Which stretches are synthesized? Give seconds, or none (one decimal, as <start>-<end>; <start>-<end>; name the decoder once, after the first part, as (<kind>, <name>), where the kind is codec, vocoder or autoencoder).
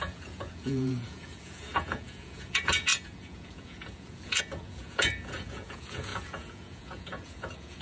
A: 0.0-7.8 (vocoder, Vocos)